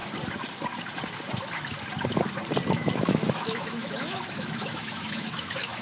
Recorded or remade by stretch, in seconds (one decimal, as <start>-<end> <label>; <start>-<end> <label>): 0.0-2.7 recorded; 2.7-5.8 remade